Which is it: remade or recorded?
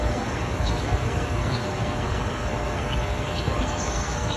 remade